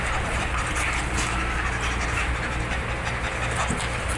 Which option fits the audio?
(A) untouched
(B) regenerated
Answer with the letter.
A